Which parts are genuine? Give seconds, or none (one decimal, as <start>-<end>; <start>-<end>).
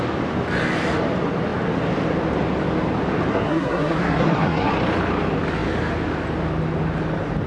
0.0-3.3; 4.7-7.5